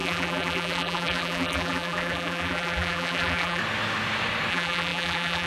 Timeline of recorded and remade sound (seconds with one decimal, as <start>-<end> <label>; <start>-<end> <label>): 0.0-3.6 remade; 3.6-4.5 recorded; 4.5-5.5 remade

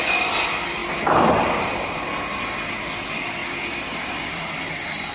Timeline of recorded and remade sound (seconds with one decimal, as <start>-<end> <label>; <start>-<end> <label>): 0.0-5.1 recorded